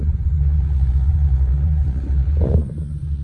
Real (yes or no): no